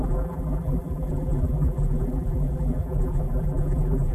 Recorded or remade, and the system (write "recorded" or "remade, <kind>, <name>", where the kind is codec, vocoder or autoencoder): remade, vocoder, BigVGAN v2